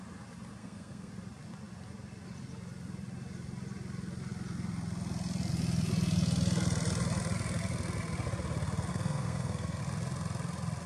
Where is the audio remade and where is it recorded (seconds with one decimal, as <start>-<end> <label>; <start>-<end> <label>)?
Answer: 0.0-0.6 recorded; 0.6-1.1 remade; 1.1-8.9 recorded; 8.9-9.8 remade; 9.8-10.9 recorded

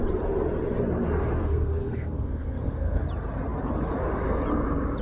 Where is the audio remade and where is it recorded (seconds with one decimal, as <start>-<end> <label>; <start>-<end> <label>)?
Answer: 0.0-1.4 recorded; 1.4-3.0 remade; 3.0-5.0 recorded

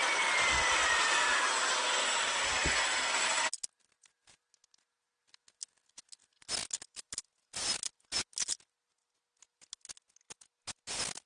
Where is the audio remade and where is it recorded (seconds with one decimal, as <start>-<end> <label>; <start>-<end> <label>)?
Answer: 0.0-11.3 recorded

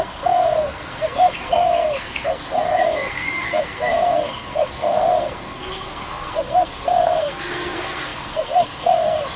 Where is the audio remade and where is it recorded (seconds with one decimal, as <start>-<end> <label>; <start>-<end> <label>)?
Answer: 0.0-9.4 remade

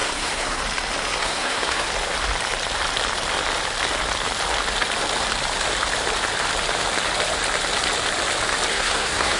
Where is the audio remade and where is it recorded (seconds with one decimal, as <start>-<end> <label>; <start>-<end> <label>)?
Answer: 0.0-0.6 remade; 0.6-1.2 recorded; 1.2-1.9 remade; 1.9-8.7 recorded; 8.7-9.4 remade